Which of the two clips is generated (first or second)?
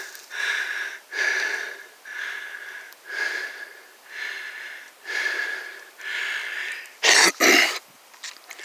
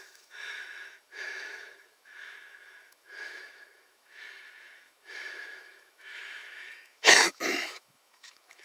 second